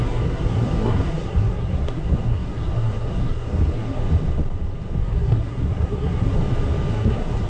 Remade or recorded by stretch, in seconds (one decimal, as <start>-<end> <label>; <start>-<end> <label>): 0.0-4.0 remade; 4.0-5.0 recorded; 5.0-6.4 remade; 6.4-6.9 recorded; 6.9-7.5 remade